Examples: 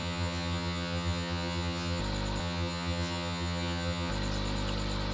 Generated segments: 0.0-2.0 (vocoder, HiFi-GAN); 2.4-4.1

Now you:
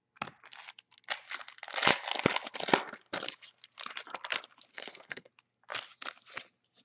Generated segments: 4.7-5.3 (codec, SNAC)

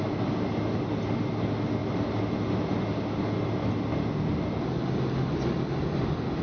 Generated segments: none

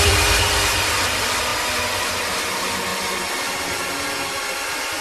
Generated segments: 0.0-1.5 (vocoder, BigVGAN v2); 2.3-5.0

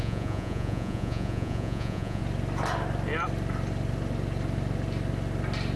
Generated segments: 0.0-2.2 (vocoder, Vocos)